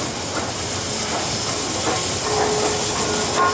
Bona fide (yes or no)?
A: yes